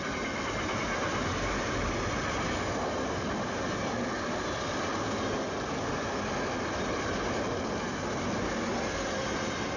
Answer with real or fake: real